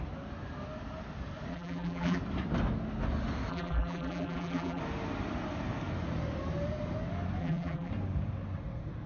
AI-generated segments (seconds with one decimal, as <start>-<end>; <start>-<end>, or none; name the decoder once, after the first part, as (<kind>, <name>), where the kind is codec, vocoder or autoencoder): 1.5-2.2 (vocoder, BigVGAN v2); 3.5-4.8; 7.4-7.9